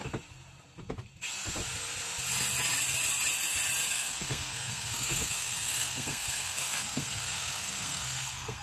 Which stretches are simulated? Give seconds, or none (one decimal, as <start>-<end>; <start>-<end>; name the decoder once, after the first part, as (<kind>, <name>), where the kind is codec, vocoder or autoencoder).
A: 3.9-8.6 (codec, SNAC)